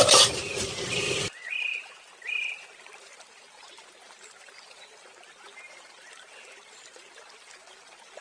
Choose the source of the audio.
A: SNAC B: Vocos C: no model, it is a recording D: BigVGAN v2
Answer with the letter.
D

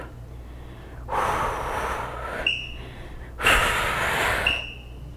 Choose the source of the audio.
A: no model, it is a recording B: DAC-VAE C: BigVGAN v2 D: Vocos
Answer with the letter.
A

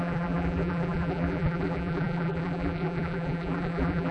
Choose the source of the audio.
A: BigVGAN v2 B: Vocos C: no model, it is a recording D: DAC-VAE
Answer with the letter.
A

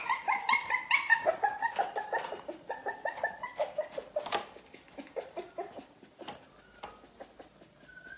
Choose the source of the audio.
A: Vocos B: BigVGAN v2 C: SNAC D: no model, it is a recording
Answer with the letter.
D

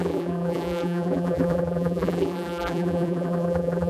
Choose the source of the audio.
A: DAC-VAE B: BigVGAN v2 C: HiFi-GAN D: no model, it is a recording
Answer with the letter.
B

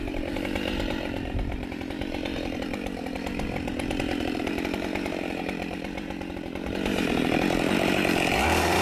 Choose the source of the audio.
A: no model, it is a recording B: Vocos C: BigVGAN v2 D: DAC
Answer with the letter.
C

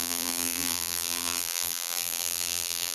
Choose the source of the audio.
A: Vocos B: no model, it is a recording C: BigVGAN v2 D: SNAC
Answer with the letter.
C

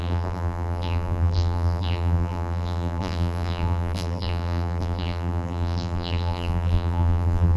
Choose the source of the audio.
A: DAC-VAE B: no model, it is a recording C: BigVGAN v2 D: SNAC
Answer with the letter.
C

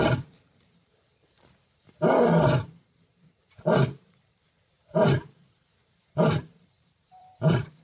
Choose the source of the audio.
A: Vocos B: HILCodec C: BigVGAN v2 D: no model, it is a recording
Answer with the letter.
C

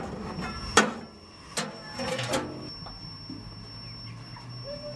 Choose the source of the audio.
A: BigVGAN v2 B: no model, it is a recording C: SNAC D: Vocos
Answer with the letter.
B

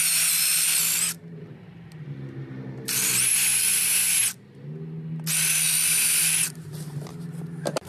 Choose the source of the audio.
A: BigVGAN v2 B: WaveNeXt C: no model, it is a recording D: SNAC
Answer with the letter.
C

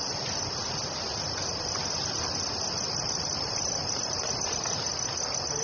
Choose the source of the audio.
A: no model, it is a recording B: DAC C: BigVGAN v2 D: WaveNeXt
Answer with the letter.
A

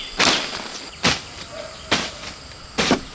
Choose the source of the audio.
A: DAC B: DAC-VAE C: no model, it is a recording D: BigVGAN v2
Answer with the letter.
C